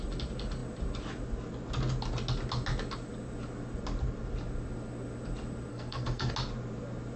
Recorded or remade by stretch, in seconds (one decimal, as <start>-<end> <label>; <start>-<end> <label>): 0.0-5.7 recorded; 5.7-6.3 remade; 6.3-7.2 recorded